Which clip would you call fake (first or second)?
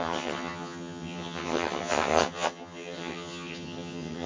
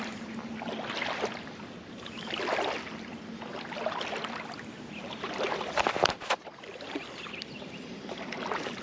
first